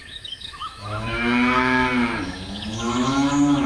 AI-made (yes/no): yes